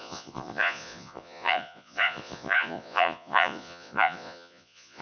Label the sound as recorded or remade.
remade